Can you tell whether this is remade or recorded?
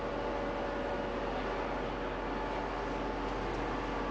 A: recorded